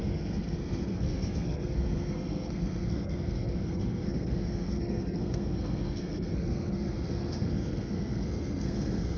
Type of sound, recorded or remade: remade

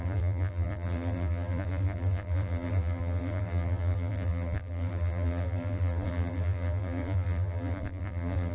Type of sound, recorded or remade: remade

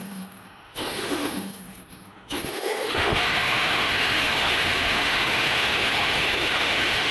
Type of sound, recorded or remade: remade